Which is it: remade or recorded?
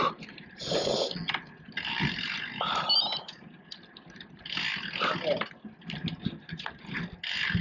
recorded